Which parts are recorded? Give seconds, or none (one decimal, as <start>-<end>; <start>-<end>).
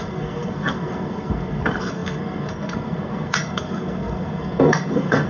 none